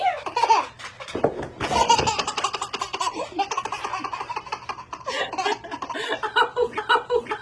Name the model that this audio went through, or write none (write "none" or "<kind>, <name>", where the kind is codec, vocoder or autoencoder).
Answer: none